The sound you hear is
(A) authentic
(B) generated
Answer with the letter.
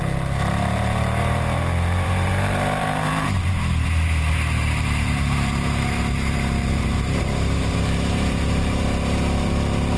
B